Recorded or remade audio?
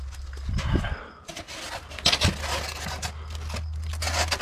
recorded